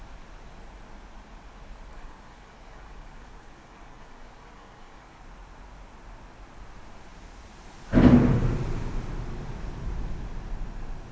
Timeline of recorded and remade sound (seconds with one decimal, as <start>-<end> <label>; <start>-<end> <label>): 0.0-1.9 recorded; 1.9-5.2 remade; 5.2-11.1 recorded